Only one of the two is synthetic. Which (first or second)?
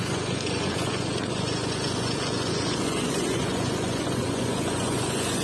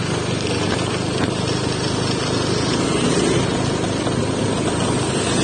first